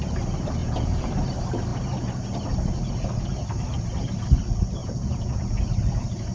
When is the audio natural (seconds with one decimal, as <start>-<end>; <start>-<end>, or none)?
0.0-0.6; 1.1-4.8; 5.6-6.3